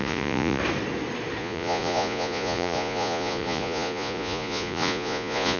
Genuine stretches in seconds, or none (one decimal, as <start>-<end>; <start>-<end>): 0.6-1.4